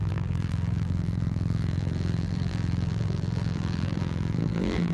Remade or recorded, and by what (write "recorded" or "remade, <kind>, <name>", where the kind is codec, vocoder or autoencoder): remade, vocoder, BigVGAN v2